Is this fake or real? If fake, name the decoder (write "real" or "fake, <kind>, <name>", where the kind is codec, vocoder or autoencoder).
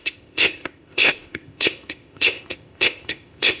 fake, codec, ZipCodec